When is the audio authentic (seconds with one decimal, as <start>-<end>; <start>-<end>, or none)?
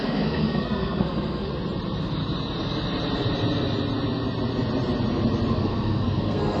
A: 1.5-5.5